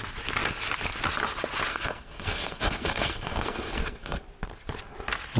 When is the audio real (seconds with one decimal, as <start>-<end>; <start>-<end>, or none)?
0.0-1.7; 4.2-5.4